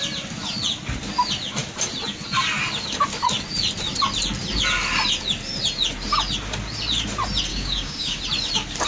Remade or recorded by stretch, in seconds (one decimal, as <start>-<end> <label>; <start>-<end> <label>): 0.0-7.5 recorded; 7.5-8.2 remade; 8.2-8.9 recorded